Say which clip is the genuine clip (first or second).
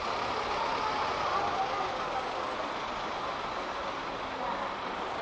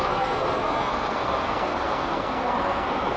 first